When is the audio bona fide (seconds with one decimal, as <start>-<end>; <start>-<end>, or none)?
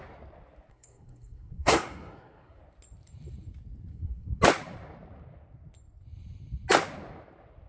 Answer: 0.0-0.7; 2.6-3.9; 4.4-7.7